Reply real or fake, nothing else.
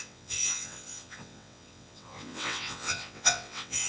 fake